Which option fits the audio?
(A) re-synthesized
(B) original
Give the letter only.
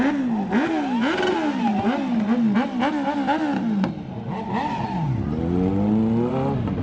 B